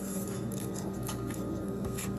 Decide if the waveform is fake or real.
fake